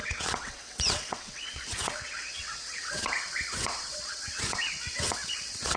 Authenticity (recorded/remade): remade